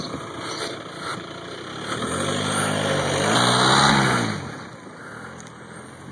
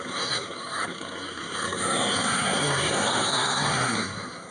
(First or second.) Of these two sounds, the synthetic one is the second